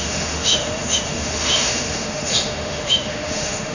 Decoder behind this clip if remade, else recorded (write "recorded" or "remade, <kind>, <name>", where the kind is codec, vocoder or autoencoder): remade, autoencoder, DAC-VAE